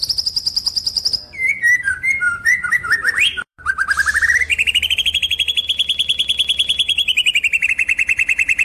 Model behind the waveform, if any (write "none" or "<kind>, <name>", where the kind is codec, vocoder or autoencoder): vocoder, BigVGAN v2